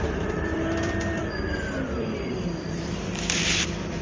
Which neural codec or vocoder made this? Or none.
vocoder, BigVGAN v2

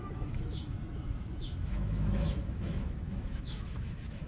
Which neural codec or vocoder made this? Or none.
autoencoder, DAC-VAE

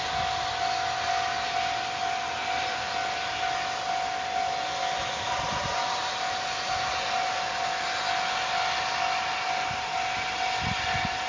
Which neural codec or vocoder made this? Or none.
none